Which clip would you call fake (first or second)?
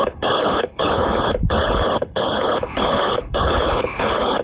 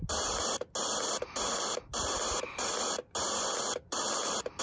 first